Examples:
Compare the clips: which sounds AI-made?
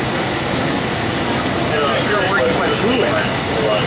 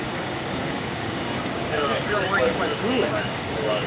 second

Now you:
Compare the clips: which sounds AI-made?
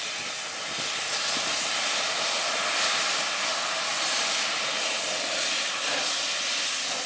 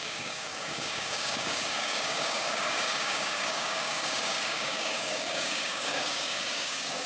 second